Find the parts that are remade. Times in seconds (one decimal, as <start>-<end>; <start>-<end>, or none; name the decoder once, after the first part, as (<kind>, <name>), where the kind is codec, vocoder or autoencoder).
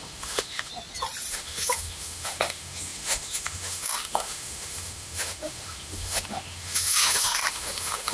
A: 0.0-0.7 (autoencoder, DAC-VAE); 1.3-8.1